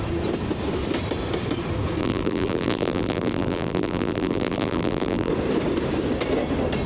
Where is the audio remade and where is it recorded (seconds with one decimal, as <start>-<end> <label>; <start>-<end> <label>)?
0.0-2.0 recorded; 2.0-5.3 remade; 5.3-6.9 recorded